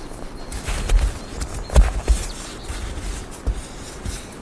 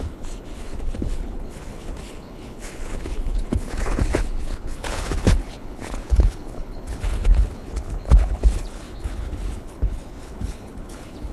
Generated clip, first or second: second